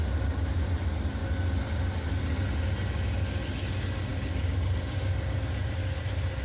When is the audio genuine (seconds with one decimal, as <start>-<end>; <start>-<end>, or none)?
0.0-6.4